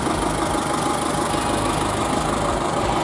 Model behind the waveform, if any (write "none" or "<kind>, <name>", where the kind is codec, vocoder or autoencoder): none